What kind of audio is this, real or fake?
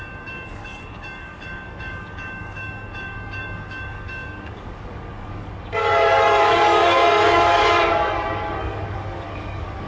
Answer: fake